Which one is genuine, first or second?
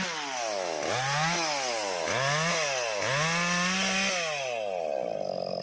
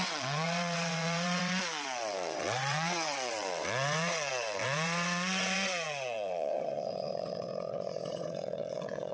first